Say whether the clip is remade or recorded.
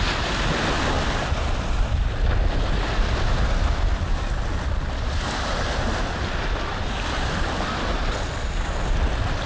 recorded